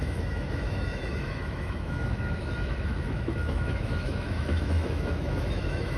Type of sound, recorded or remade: remade